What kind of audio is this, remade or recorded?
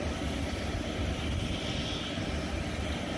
recorded